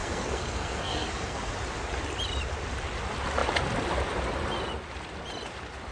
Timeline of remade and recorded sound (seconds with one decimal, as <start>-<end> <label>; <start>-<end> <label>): 0.0-1.5 remade; 1.5-5.9 recorded